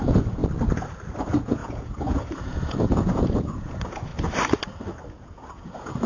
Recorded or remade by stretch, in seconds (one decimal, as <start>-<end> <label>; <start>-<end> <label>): 0.0-0.4 remade; 0.4-1.2 recorded; 1.2-4.1 remade; 4.1-5.1 recorded; 5.1-6.1 remade